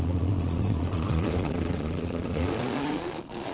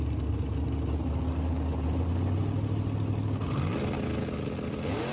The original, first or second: second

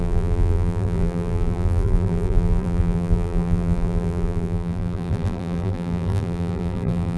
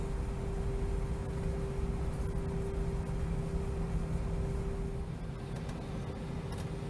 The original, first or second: second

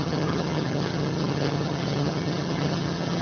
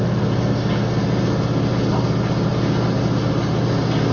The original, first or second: second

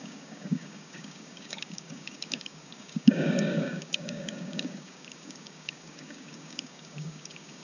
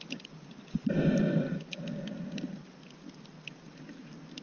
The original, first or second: second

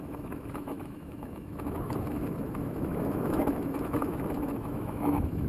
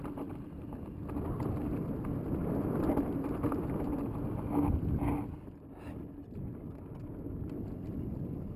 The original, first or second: second